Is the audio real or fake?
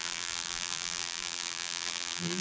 fake